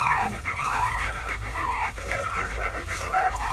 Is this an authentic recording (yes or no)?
no